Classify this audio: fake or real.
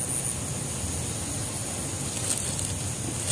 real